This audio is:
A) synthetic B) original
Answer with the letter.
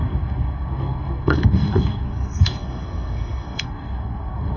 A